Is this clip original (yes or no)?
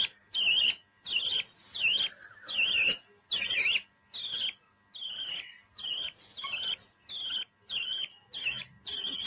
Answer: yes